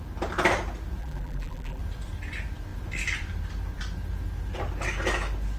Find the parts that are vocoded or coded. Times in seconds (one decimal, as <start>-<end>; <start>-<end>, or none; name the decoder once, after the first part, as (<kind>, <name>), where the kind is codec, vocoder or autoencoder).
1.0-1.8 (vocoder, BigVGAN v2)

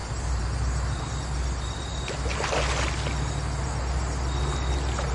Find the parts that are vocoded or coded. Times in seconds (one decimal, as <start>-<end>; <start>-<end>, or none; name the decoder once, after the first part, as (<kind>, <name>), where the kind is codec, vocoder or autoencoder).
0.0-1.0 (vocoder, BigVGAN v2)

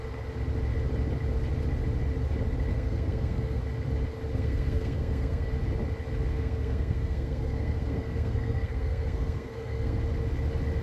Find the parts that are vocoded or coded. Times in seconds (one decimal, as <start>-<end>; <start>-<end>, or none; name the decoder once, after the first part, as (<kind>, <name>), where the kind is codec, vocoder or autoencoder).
2.7-3.6 (codec, SNAC); 4.3-5.5; 6.3-10.0

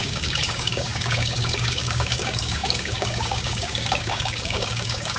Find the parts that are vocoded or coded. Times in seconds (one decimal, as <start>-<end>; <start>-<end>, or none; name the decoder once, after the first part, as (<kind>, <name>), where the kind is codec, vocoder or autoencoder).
0.0-5.2 (codec, DAC)